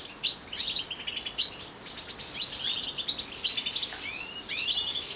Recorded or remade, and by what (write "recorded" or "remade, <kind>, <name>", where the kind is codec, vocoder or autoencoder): recorded